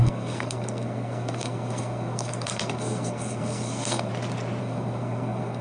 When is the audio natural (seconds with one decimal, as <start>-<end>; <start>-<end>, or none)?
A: 4.1-4.6